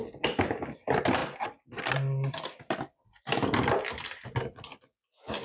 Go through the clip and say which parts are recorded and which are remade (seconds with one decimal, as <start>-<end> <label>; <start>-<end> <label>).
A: 0.0-1.2 recorded; 1.2-4.4 remade; 4.4-5.4 recorded